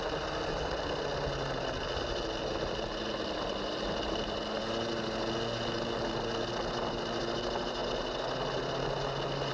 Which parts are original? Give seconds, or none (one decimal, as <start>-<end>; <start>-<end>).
0.0-9.5